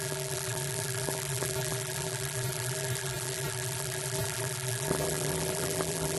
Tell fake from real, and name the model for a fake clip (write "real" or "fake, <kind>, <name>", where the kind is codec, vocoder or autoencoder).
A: fake, vocoder, BigVGAN v2